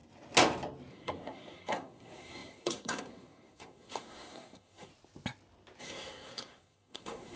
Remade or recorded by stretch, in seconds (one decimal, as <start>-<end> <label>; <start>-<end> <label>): 0.0-0.9 recorded; 0.9-4.9 remade; 4.9-5.8 recorded; 5.8-7.4 remade

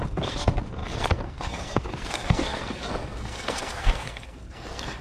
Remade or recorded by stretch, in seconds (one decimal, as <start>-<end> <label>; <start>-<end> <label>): 0.0-5.0 remade

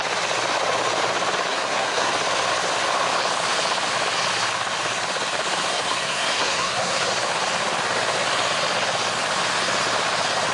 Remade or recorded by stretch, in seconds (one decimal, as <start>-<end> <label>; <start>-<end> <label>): 0.0-1.5 recorded; 1.5-2.1 remade; 2.1-5.7 recorded; 5.7-7.1 remade; 7.1-10.5 recorded

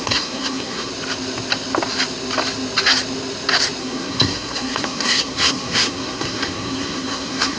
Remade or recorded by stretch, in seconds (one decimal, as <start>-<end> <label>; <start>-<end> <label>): 0.0-0.9 remade; 0.9-3.8 recorded; 3.8-7.6 remade

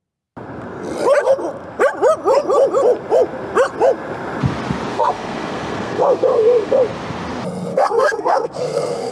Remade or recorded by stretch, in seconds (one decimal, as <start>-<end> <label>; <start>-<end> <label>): 0.0-4.9 recorded; 4.9-6.8 remade; 6.8-7.7 recorded; 7.7-9.1 remade

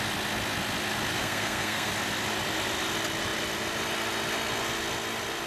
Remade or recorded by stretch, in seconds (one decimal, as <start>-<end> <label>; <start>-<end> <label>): 0.0-1.2 recorded; 1.2-1.9 remade; 1.9-5.5 recorded

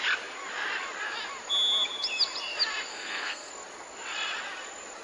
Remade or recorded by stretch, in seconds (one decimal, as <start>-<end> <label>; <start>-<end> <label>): 0.0-2.9 recorded; 2.9-3.5 remade; 3.5-5.0 recorded

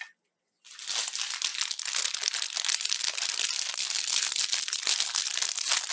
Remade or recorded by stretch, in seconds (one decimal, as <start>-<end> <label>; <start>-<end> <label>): 0.0-5.9 recorded